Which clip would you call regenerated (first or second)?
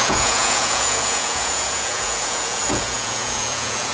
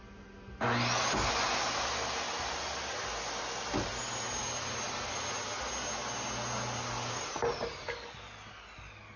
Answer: first